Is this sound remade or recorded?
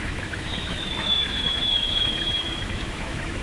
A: remade